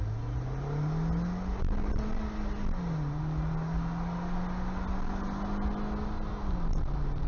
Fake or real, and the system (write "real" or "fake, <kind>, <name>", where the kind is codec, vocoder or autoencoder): real